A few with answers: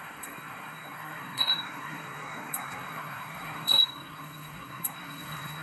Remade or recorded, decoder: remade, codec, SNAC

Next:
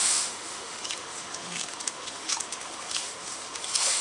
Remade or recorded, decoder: remade, autoencoder, DAC-VAE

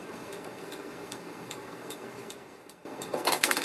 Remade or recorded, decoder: remade, codec, SNAC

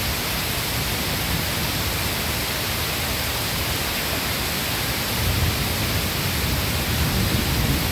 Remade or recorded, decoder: recorded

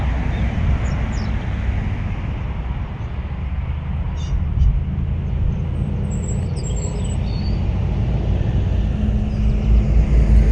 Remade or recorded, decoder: recorded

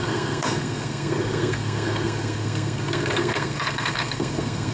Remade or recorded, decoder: remade, codec, SNAC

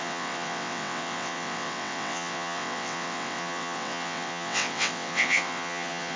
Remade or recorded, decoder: remade, vocoder, WaveNeXt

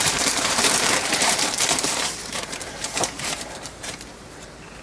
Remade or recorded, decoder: remade, vocoder, BigVGAN v2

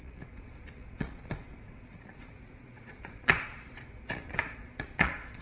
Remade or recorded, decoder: remade, vocoder, Vocos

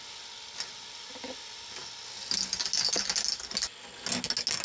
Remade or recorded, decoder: recorded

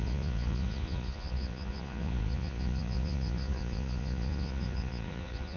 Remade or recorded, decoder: remade, vocoder, Vocos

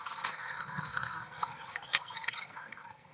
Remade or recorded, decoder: remade, codec, SNAC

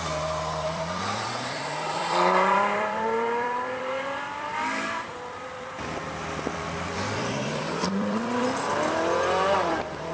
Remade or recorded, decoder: remade, vocoder, BigVGAN v2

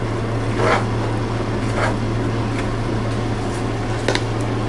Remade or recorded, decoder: recorded